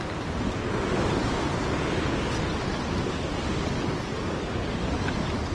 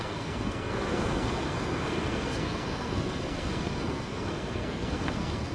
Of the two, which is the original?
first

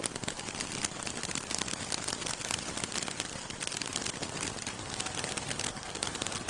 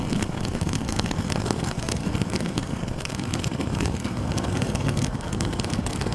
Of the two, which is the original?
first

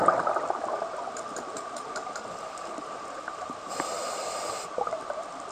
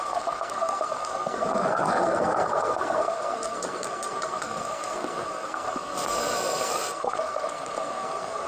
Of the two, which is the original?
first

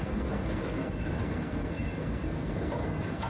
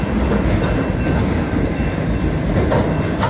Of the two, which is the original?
second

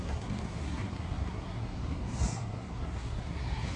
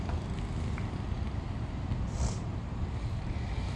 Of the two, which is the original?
second